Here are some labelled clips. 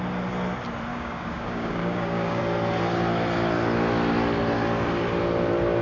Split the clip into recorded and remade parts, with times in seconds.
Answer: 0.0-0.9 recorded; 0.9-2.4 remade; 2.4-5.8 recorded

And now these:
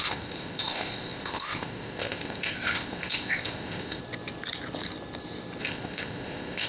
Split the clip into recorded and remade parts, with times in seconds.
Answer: 0.0-4.0 remade; 4.0-5.6 recorded; 5.6-6.7 remade

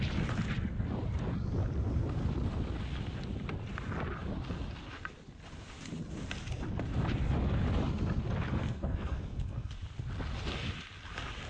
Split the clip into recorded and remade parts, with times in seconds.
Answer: 0.0-8.5 recorded; 8.5-9.7 remade; 9.7-11.5 recorded

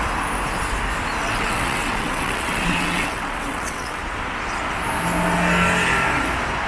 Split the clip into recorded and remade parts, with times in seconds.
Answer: 0.0-1.2 recorded; 1.2-4.0 remade; 4.0-6.7 recorded

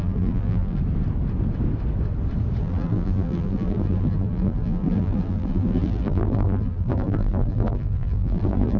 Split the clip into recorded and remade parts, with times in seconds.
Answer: 0.0-0.8 remade; 0.8-2.6 recorded; 2.6-8.8 remade

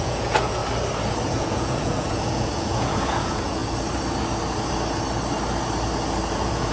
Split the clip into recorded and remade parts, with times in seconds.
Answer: 0.0-0.6 remade; 0.6-1.3 recorded; 1.3-3.6 remade; 3.6-6.3 recorded; 6.3-6.7 remade

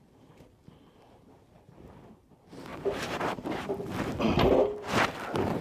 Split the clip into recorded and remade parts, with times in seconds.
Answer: 0.0-2.7 recorded; 2.7-3.8 remade; 3.8-5.6 recorded

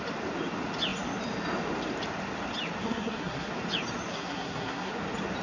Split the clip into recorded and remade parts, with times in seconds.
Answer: 0.0-2.8 recorded; 2.8-3.5 remade; 3.5-4.1 recorded; 4.1-4.9 remade; 4.9-5.4 recorded